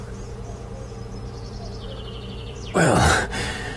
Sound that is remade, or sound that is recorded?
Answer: remade